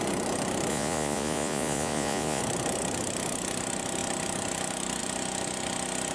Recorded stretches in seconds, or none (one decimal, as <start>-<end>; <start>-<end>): 0.0-0.7; 2.4-6.1